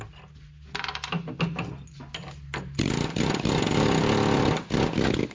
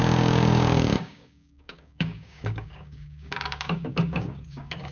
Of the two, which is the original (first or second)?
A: first